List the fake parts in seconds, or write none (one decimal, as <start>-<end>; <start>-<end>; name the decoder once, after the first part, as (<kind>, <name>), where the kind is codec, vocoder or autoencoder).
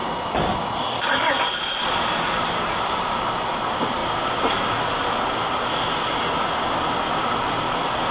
none